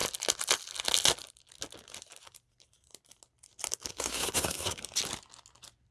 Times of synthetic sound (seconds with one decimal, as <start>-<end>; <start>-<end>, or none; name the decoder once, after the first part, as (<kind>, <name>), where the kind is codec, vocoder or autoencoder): 3.9-4.8 (codec, SNAC)